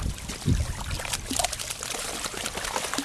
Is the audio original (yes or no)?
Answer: yes